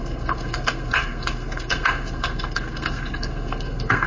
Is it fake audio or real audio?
fake